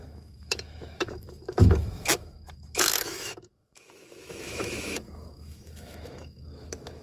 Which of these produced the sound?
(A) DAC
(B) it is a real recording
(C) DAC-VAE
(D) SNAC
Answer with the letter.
C